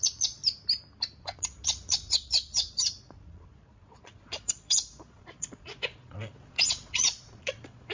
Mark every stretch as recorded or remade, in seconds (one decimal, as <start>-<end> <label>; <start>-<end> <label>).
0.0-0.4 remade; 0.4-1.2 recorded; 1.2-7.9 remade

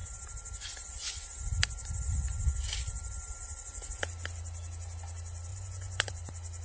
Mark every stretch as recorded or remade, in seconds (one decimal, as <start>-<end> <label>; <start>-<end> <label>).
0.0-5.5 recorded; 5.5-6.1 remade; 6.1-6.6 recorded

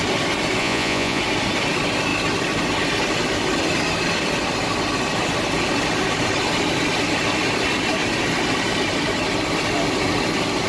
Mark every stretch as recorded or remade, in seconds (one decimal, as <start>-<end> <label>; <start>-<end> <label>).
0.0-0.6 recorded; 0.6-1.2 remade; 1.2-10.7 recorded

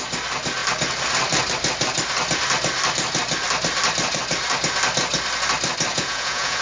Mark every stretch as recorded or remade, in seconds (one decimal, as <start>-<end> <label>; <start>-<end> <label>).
0.0-5.9 recorded; 5.9-6.6 remade

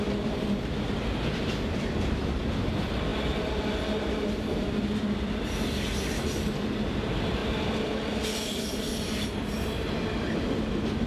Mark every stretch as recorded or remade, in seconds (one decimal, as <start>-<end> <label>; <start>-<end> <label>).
0.0-11.1 recorded